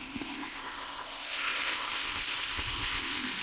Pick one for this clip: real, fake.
fake